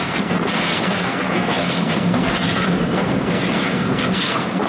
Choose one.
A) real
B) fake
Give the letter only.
B